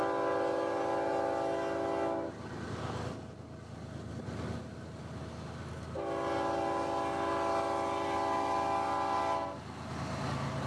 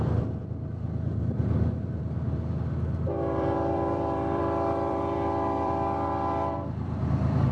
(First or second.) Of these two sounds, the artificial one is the second